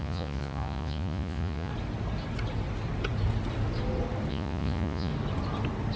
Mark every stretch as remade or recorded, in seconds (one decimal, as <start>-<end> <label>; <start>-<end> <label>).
0.0-1.7 remade; 1.7-4.3 recorded; 4.3-5.1 remade; 5.1-6.0 recorded